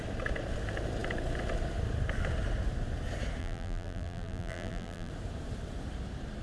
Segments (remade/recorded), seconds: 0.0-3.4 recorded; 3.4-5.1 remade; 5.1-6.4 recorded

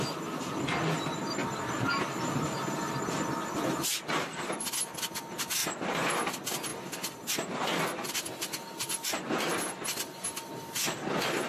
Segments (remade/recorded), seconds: 0.0-11.5 recorded

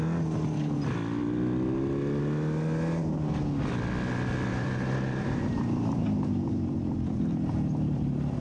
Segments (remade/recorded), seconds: 0.0-4.5 recorded; 4.5-8.4 remade

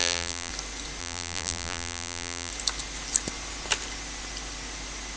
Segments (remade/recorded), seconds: 0.0-0.5 remade; 0.5-1.0 recorded; 1.0-2.5 remade; 2.5-5.2 recorded